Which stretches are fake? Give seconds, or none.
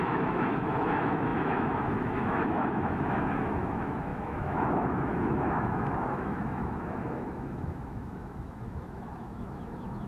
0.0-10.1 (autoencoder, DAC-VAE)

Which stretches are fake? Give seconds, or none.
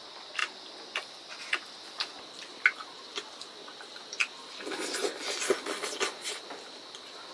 none